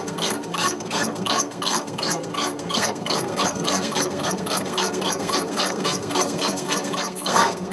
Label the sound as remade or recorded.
remade